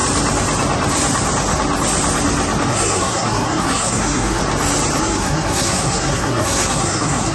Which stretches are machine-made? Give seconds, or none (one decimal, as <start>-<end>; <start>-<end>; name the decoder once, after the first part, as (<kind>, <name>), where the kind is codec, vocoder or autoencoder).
2.7-4.4 (codec, SNAC); 5.0-7.3